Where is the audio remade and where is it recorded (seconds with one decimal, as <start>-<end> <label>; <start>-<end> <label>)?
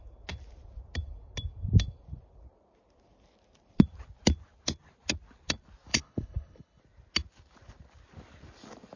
0.0-5.9 recorded; 5.9-6.8 remade; 6.8-9.0 recorded